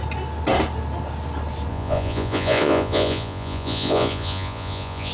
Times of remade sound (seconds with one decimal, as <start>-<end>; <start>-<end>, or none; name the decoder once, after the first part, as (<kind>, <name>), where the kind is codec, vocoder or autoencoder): 1.7-5.1 (vocoder, Vocos)